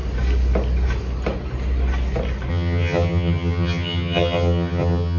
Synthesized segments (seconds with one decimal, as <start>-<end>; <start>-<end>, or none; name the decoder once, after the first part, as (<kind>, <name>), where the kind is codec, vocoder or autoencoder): 2.5-5.2 (vocoder, HiFi-GAN)